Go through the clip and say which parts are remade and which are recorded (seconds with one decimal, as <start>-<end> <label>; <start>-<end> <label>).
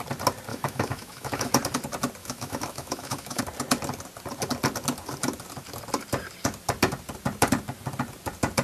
0.0-0.5 recorded; 0.5-1.5 remade; 1.5-2.2 recorded; 2.2-3.4 remade; 3.4-8.6 recorded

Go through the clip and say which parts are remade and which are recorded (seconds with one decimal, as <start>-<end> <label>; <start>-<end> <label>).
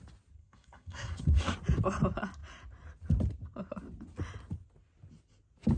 0.0-0.4 recorded; 0.4-1.5 remade; 1.5-5.8 recorded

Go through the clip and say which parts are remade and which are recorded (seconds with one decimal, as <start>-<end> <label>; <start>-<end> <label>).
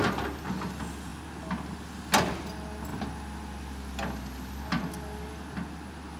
0.0-6.2 recorded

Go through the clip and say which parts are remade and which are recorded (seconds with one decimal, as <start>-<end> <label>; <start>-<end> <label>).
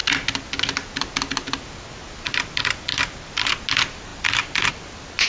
0.0-5.3 recorded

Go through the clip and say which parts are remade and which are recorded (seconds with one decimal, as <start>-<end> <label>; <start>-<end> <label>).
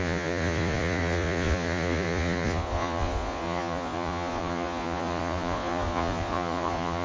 0.0-7.0 remade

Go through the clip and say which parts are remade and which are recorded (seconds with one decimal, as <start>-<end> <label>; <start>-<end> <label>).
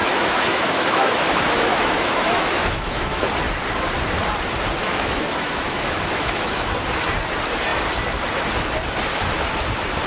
0.0-3.3 remade; 3.3-4.8 recorded; 4.8-6.7 remade; 6.7-10.1 recorded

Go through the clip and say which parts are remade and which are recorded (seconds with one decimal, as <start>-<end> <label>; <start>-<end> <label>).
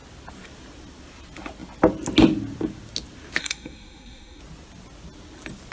0.0-3.4 recorded; 3.4-4.4 remade; 4.4-5.7 recorded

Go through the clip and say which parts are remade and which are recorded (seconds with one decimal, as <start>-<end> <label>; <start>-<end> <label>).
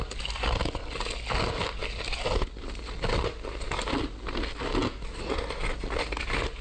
0.0-6.6 recorded